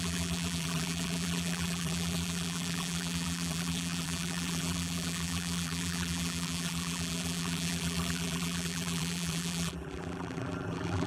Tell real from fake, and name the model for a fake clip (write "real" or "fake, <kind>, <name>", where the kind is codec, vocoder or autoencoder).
fake, vocoder, BigVGAN v2